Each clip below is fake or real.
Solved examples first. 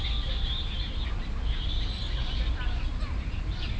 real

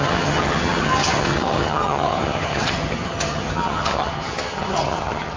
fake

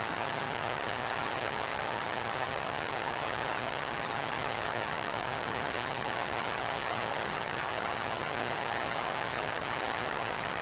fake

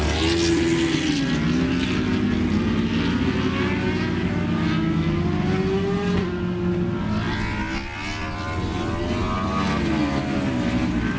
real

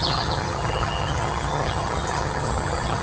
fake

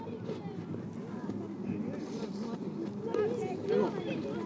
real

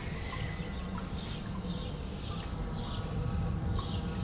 real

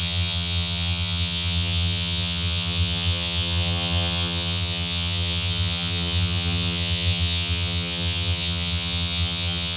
fake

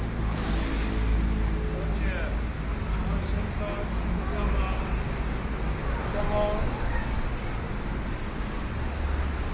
real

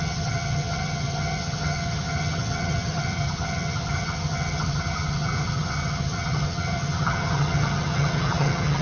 fake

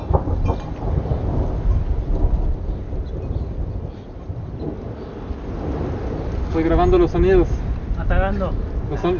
real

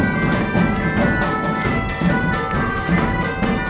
real